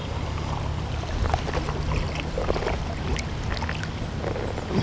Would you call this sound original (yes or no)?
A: yes